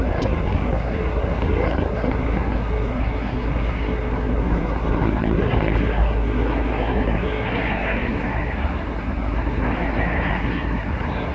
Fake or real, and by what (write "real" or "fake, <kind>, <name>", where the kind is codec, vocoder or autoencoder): fake, codec, SNAC